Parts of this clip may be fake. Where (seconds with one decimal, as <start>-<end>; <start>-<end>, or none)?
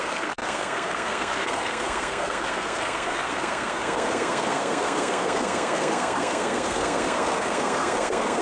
0.0-8.4